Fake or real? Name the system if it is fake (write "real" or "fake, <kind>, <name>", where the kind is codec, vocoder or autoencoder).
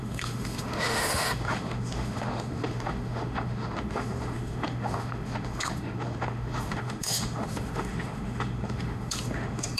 fake, autoencoder, DAC-VAE